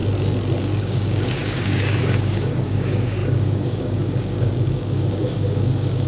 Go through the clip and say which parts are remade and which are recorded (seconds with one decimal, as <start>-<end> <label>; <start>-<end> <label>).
0.0-0.6 recorded; 0.6-6.1 remade